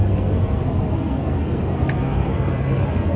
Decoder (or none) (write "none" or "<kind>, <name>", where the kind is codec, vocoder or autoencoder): codec, SNAC